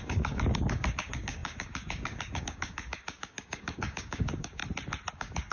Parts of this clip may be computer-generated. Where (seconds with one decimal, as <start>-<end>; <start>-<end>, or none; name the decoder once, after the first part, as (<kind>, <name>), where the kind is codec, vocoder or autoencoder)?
0.0-4.6 (codec, DAC); 5.1-5.5

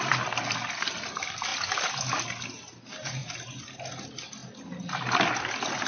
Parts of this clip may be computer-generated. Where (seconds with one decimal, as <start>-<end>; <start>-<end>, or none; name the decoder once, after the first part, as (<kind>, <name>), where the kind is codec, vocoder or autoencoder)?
none